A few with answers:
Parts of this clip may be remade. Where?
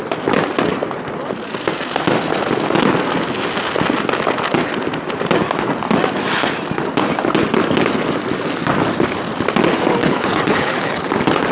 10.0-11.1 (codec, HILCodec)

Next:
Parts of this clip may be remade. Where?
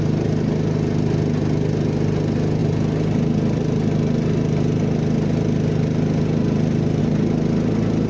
none